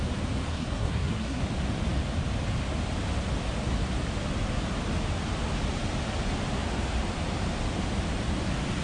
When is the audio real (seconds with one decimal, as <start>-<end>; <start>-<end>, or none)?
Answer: 0.0-0.5; 1.4-8.8